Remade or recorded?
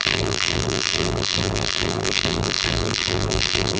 remade